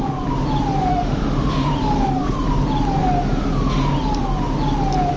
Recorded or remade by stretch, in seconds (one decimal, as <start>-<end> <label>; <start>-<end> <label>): 0.0-0.9 recorded; 0.9-1.7 remade; 1.7-5.2 recorded

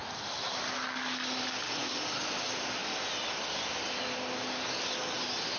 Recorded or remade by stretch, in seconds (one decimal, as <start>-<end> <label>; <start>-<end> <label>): 0.0-5.6 recorded

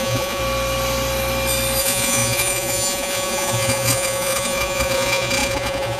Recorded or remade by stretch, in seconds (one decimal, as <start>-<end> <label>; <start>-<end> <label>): 0.0-0.4 remade; 0.4-1.8 recorded; 1.8-6.0 remade

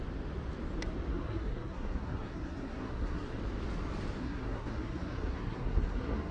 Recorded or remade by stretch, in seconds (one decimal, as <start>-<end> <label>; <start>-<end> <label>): 0.0-1.1 recorded; 1.1-3.4 remade; 3.4-4.2 recorded; 4.2-6.3 remade

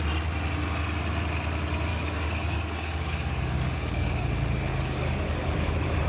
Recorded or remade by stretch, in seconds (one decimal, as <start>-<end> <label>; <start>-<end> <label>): 0.0-1.9 recorded; 1.9-4.3 remade; 4.3-4.7 recorded; 4.7-6.1 remade

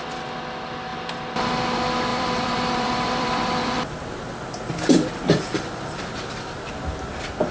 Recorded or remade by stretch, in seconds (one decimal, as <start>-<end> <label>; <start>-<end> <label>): 0.0-2.1 recorded; 2.1-6.0 remade; 6.0-7.5 recorded